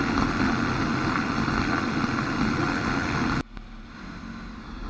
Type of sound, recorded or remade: remade